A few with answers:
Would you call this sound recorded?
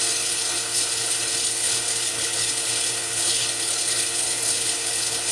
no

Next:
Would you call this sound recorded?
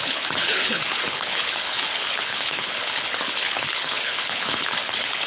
no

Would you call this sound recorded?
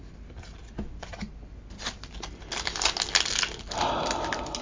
yes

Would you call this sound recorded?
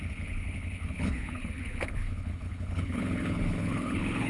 no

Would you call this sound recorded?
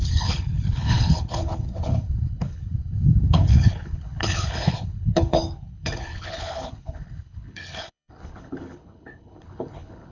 no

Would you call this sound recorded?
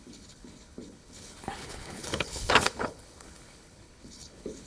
no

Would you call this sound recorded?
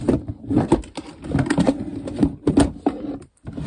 yes